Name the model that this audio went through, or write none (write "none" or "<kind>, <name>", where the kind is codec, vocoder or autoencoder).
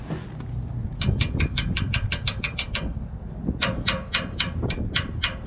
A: none